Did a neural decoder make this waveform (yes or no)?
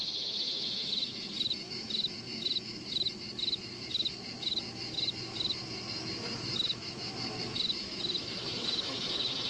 yes